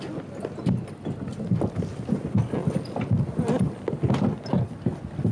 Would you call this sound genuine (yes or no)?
yes